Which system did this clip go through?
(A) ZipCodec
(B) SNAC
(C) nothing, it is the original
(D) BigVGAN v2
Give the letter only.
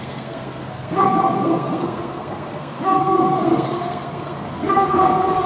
B